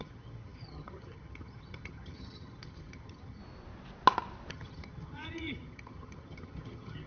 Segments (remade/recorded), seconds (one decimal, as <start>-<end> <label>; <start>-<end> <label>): 0.0-3.4 remade; 3.4-4.5 recorded; 4.5-7.1 remade